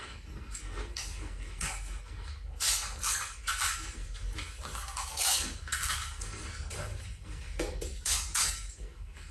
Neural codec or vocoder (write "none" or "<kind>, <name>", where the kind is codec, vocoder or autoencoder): codec, SNAC